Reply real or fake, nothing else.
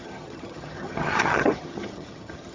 fake